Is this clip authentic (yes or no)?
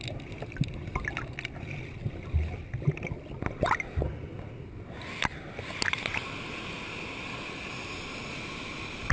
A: yes